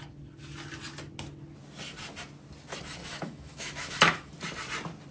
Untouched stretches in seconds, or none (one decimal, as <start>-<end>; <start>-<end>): 0.0-3.0; 4.3-5.1